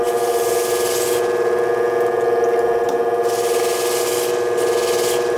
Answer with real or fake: real